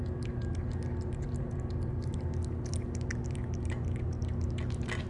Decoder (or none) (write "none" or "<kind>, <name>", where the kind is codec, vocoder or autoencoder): none